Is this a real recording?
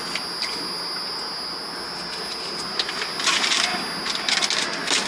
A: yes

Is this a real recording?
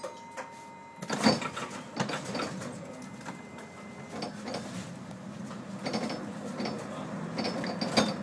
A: yes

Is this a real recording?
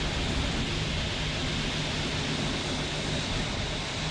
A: yes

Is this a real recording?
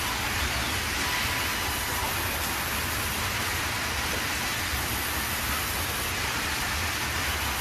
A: yes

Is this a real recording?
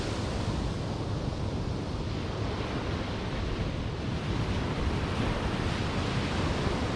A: yes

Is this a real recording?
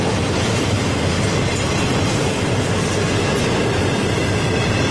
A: yes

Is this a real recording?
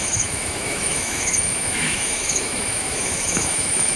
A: no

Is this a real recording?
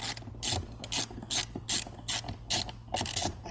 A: yes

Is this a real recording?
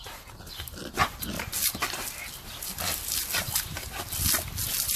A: yes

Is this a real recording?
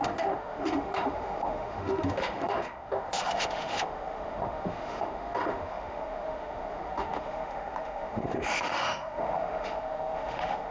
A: no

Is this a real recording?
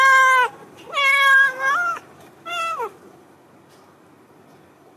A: yes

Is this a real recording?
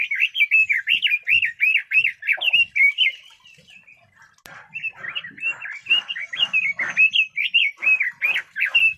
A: yes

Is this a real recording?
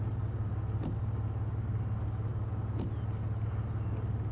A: yes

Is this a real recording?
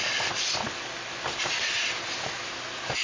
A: yes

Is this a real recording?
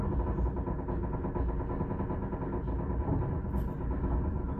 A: yes